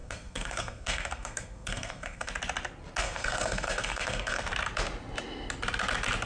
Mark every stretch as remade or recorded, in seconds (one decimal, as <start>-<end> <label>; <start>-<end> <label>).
0.0-2.3 remade; 2.3-3.0 recorded; 3.0-4.5 remade; 4.5-6.3 recorded